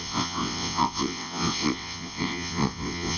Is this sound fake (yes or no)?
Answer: yes